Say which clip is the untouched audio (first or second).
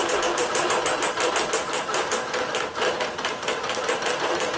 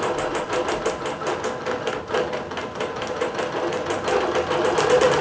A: second